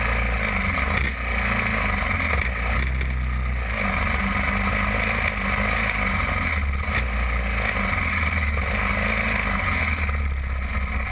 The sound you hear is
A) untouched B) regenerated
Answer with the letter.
A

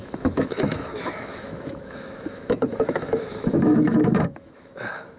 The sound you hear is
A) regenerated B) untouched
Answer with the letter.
A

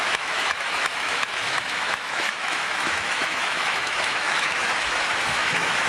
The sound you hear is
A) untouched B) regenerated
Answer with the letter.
B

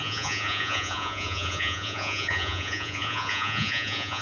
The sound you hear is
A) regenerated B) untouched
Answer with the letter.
A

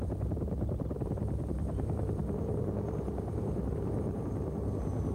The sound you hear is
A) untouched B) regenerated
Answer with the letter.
B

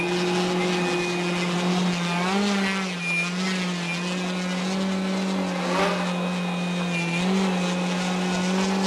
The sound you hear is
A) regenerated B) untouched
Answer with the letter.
B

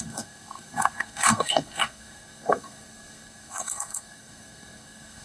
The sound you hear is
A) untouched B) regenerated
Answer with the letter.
B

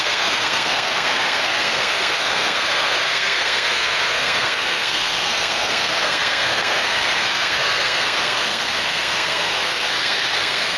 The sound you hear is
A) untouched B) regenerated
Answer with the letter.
B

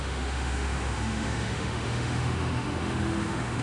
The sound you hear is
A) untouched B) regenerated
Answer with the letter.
B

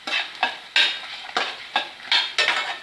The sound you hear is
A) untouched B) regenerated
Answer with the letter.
A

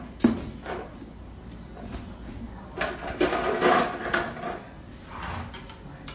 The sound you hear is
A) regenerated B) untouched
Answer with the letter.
B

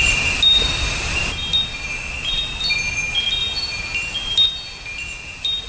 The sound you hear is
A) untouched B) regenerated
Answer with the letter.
A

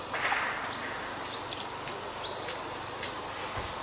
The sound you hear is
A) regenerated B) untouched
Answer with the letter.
B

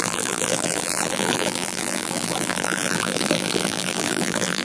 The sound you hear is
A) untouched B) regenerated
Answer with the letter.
B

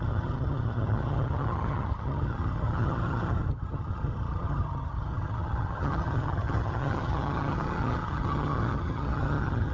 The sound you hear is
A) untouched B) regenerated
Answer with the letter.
B